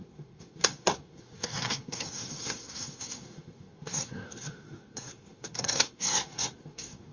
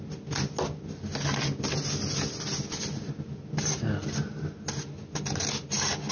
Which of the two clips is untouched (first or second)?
second